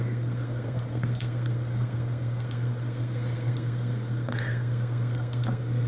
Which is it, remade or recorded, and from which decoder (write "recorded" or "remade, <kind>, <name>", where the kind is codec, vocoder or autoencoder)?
remade, codec, SNAC